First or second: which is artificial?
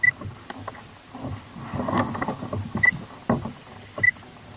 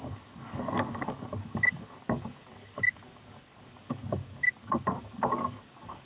second